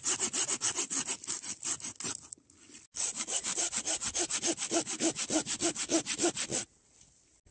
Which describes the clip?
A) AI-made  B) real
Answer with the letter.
B